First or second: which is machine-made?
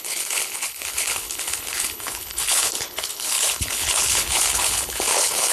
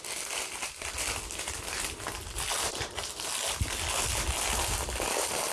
first